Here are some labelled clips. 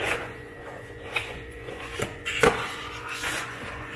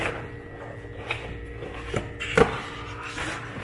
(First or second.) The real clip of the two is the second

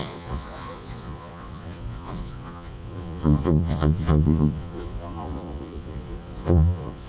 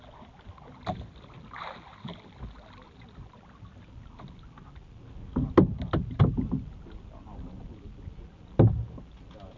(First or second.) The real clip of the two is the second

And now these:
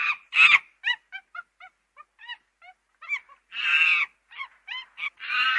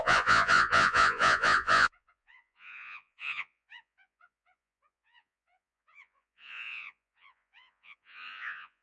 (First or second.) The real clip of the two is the first